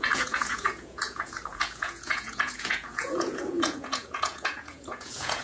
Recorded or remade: remade